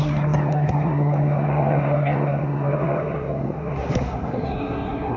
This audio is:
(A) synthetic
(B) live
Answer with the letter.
A